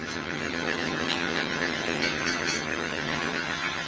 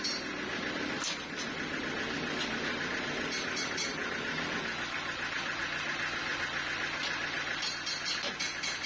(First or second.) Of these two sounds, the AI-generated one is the first